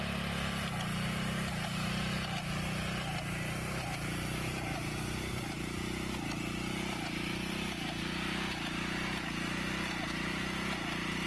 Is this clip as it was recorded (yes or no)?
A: yes